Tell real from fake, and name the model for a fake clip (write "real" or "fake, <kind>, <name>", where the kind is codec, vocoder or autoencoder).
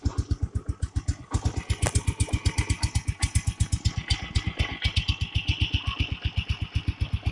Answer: real